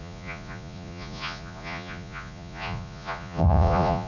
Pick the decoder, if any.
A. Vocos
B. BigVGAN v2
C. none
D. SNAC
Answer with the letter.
A